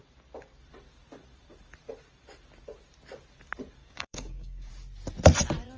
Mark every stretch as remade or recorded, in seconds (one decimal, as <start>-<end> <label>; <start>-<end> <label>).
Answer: 0.0-3.8 recorded; 3.8-4.7 remade; 4.7-5.8 recorded